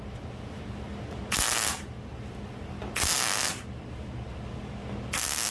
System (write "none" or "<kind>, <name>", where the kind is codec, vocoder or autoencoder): none